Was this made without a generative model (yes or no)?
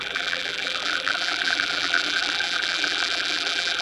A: no